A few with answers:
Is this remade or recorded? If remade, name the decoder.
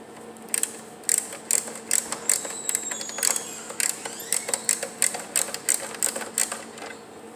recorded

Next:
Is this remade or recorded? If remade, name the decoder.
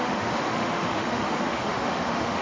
remade, autoencoder, DAC-VAE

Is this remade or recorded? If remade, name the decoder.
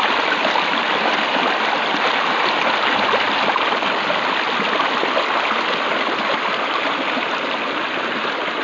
recorded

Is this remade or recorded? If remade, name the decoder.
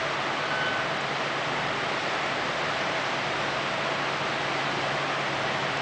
recorded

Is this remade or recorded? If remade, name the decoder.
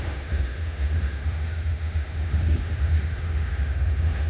remade, autoencoder, DAC-VAE